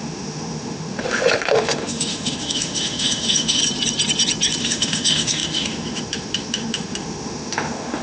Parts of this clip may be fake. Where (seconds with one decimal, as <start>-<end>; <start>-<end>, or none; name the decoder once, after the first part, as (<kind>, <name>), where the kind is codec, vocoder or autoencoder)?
0.0-3.6 (autoencoder, DAC-VAE); 4.6-8.0